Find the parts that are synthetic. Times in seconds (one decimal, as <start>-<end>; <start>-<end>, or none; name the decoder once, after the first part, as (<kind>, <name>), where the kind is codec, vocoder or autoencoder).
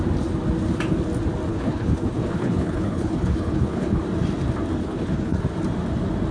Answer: 1.5-4.0 (codec, HILCodec); 4.8-5.4